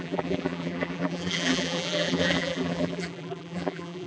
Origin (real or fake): fake